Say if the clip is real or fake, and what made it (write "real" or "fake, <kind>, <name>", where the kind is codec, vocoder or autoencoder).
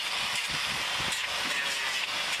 real